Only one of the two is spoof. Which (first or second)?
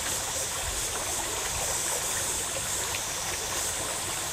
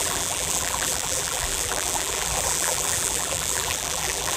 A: second